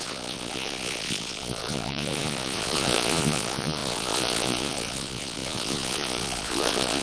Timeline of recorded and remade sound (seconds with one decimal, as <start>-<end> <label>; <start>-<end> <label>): 0.0-7.0 remade